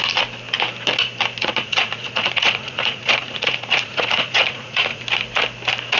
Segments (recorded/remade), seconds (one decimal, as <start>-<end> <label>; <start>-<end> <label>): 0.0-1.4 recorded; 1.4-5.0 remade; 5.0-6.0 recorded